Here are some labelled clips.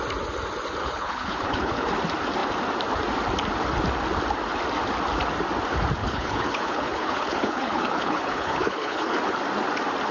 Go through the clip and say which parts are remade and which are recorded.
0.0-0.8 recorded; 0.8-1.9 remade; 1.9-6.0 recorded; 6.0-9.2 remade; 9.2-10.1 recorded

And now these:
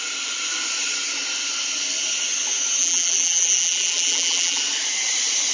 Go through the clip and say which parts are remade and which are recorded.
0.0-2.8 recorded; 2.8-4.6 remade; 4.6-5.5 recorded

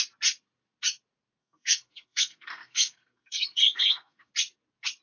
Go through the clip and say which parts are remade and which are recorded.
0.0-1.4 recorded; 1.4-4.3 remade; 4.3-5.0 recorded

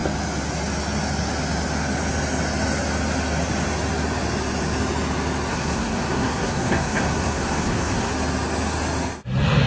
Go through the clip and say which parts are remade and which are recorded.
0.0-5.5 recorded; 5.5-8.1 remade; 8.1-9.7 recorded

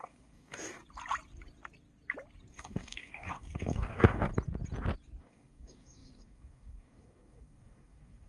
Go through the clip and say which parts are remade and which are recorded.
0.0-0.8 remade; 0.8-2.5 recorded; 2.5-4.3 remade; 4.3-5.2 recorded; 5.2-8.3 remade

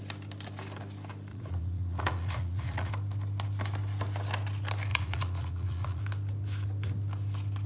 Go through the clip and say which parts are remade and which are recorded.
0.0-1.3 recorded; 1.3-2.9 remade; 2.9-4.9 recorded; 4.9-6.0 remade; 6.0-7.7 recorded